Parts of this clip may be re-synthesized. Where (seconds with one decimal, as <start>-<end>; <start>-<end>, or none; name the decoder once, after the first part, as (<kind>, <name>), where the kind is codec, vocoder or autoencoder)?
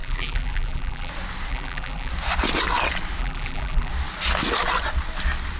0.0-1.1 (vocoder, BigVGAN v2); 1.5-2.1; 3.2-3.9